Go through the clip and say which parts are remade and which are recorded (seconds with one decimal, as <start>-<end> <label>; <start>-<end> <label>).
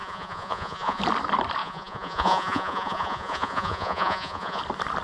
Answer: 0.0-1.0 remade; 1.0-1.6 recorded; 1.6-4.6 remade; 4.6-5.0 recorded